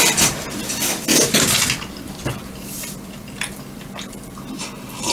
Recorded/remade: remade